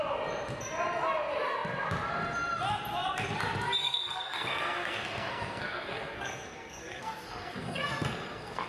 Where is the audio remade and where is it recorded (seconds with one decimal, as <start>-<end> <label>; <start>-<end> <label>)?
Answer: 0.0-3.8 recorded; 3.8-8.7 remade